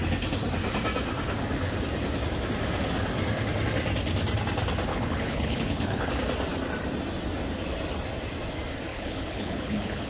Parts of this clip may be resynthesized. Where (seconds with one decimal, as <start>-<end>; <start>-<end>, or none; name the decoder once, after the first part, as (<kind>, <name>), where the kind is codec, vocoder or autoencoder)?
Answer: 4.9-6.1 (codec, HILCodec); 8.9-10.1